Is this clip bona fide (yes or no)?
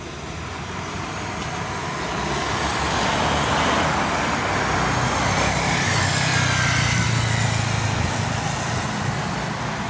yes